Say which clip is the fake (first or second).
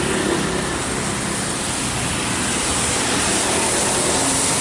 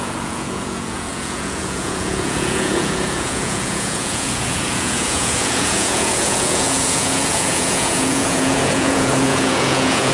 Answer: second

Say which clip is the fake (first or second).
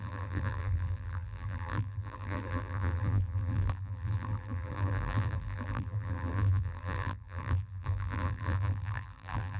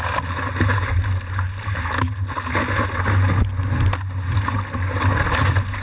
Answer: first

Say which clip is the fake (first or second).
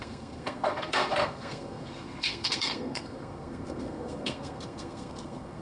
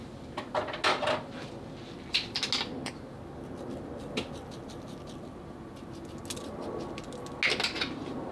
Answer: first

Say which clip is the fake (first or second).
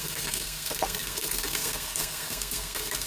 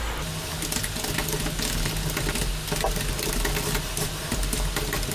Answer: first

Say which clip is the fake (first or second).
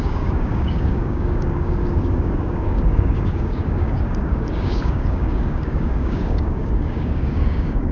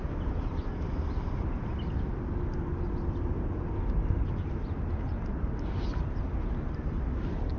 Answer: first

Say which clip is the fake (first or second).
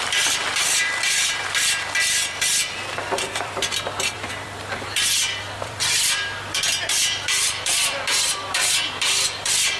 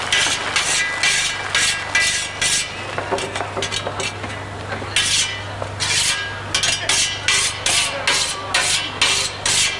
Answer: first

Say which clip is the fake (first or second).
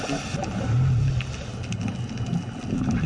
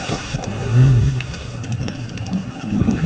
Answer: second